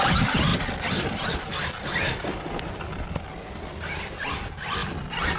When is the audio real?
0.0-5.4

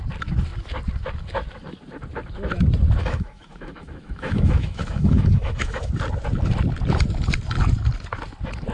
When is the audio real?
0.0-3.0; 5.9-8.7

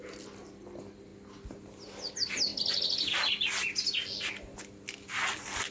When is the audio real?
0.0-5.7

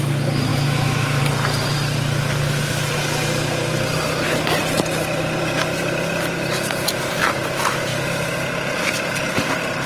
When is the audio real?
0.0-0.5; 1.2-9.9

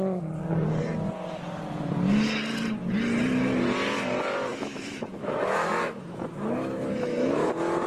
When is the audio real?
0.0-4.5; 7.5-7.9

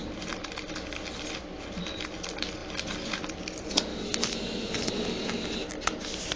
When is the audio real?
0.0-3.9; 4.9-6.4

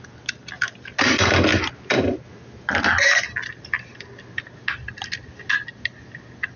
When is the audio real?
0.0-6.6